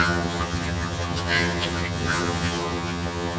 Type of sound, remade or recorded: remade